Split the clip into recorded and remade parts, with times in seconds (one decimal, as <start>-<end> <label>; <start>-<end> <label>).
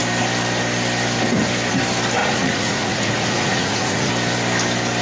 0.0-2.2 recorded; 2.2-4.1 remade; 4.1-5.0 recorded